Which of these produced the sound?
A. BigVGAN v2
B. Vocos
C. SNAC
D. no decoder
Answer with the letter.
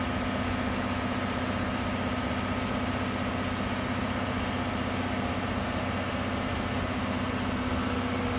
D